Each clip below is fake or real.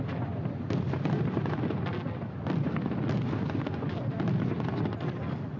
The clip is real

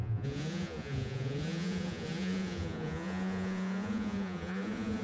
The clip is fake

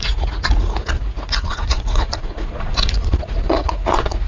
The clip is fake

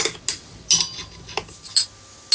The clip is real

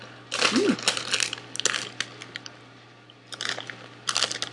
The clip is real